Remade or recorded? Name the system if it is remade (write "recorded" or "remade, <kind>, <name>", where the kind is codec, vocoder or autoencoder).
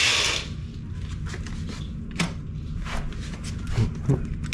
recorded